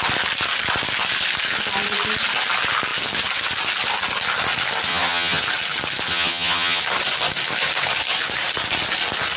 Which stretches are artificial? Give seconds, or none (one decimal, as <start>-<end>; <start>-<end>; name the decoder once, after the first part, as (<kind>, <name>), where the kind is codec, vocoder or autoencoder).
4.9-5.4 (vocoder, HiFi-GAN); 6.1-6.8